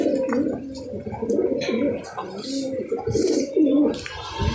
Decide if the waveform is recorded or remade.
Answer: recorded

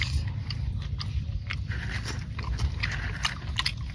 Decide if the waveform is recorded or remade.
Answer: recorded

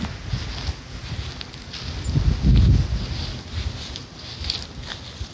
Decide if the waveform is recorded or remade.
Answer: recorded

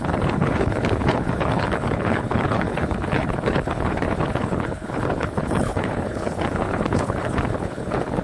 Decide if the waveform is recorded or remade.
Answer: remade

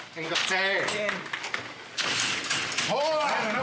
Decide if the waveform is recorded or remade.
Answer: recorded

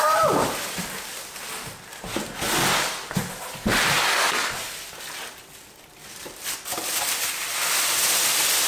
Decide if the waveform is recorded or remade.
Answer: recorded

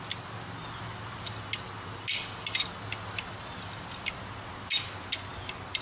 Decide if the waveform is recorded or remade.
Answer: recorded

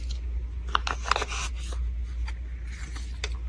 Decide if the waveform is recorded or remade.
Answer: recorded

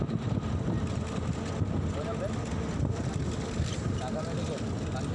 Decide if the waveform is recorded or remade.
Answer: recorded